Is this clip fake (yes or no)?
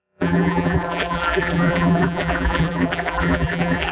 yes